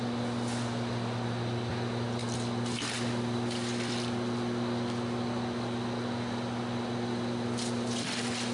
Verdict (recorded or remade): recorded